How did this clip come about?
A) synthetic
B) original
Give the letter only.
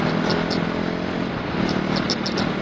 B